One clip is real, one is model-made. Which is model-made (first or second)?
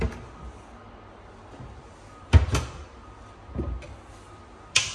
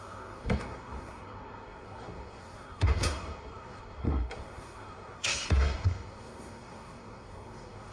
second